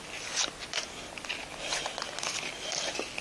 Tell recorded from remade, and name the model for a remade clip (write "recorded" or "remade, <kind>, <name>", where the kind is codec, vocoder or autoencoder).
recorded